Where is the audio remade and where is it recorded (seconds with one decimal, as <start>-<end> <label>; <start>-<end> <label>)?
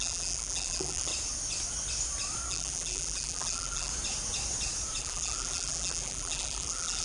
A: 0.0-1.1 remade; 1.1-2.5 recorded; 2.5-3.9 remade; 3.9-5.0 recorded; 5.0-7.0 remade